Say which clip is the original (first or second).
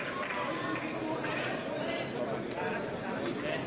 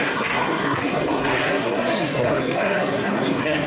first